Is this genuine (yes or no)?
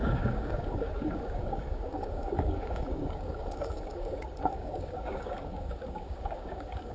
no